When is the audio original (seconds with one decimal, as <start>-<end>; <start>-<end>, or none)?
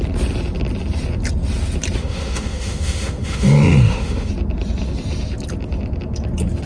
0.0-2.0; 4.3-6.7